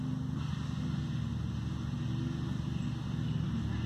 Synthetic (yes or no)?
no